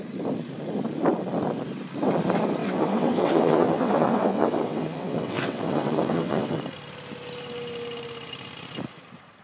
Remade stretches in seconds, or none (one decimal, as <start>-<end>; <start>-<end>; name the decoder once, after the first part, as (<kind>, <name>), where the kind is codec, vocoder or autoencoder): 2.6-6.6 (vocoder, WaveNeXt)